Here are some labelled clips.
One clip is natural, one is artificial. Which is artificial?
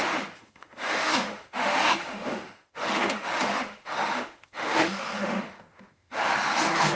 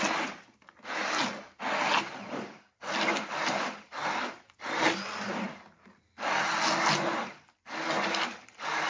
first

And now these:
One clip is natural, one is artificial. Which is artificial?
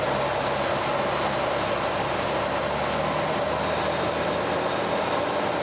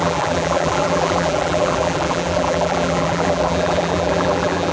second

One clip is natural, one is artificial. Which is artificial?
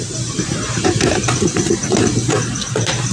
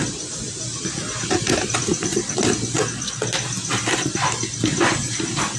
first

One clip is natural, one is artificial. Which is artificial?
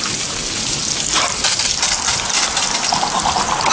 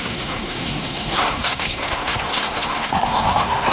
second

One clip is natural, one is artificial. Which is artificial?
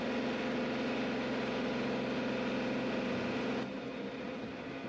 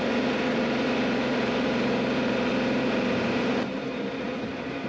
second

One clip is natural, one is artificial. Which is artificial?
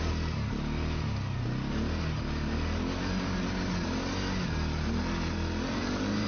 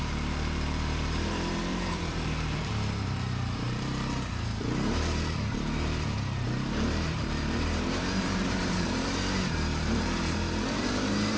second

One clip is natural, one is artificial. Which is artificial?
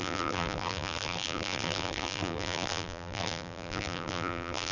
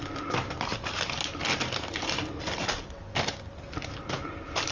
first